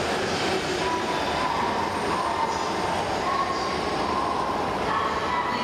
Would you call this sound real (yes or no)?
yes